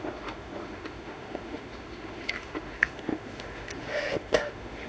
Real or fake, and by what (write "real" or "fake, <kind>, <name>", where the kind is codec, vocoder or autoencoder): fake, autoencoder, DAC-VAE